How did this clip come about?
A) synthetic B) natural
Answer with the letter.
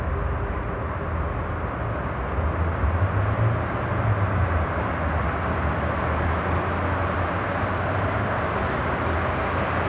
B